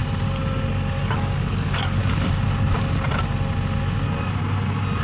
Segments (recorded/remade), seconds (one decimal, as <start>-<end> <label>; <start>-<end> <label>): 0.0-1.0 recorded; 1.0-2.0 remade; 2.0-5.0 recorded

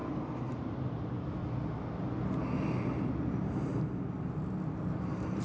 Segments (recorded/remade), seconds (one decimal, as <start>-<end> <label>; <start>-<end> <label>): 0.0-0.5 recorded; 0.5-1.4 remade; 1.4-2.9 recorded; 2.9-3.7 remade; 3.7-4.8 recorded; 4.8-5.4 remade